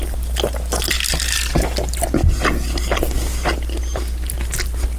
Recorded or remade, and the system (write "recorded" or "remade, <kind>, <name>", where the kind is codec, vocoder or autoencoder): recorded